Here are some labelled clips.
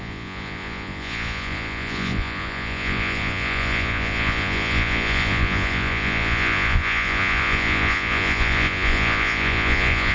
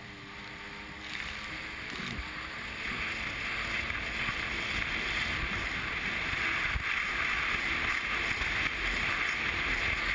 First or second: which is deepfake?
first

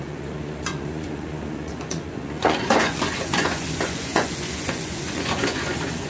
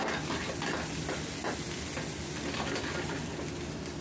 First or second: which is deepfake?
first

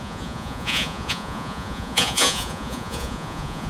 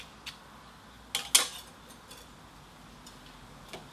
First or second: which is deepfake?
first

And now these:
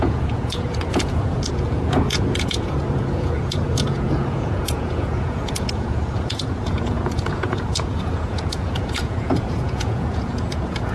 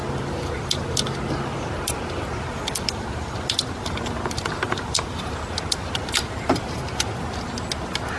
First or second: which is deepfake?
first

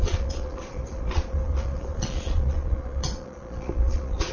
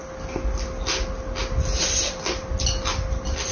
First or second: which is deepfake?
first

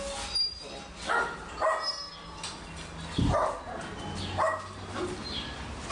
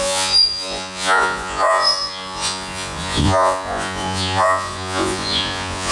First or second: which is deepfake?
second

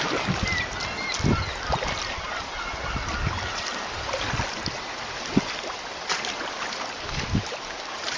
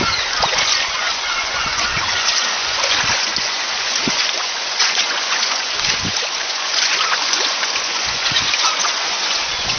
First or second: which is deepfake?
second